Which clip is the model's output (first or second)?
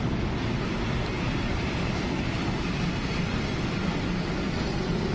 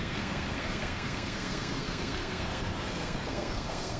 second